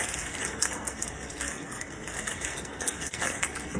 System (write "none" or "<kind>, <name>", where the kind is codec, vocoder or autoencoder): codec, SNAC